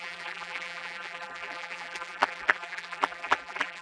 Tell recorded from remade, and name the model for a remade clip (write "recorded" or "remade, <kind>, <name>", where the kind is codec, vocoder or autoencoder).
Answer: remade, vocoder, BigVGAN v2